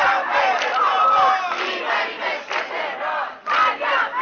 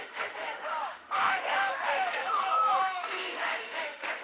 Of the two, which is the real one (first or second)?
first